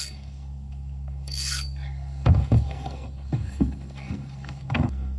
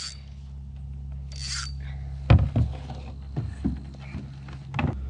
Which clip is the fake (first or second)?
first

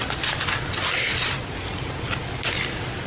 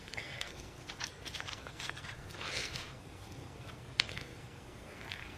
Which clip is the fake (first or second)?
second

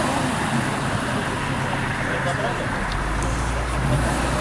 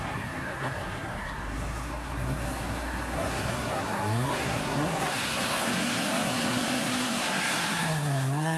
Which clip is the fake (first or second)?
second